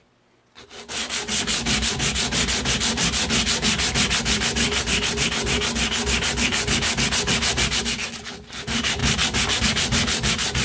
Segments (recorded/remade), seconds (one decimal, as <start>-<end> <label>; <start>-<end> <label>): 0.0-10.6 recorded